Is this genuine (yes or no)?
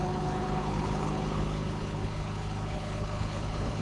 no